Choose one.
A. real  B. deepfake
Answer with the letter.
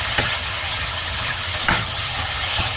B